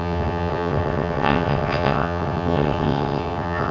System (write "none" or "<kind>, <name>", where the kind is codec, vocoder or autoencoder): vocoder, WaveNeXt